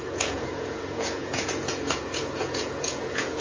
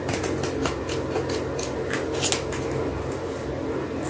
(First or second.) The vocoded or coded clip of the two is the first